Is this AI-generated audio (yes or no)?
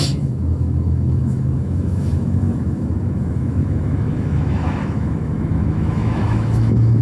yes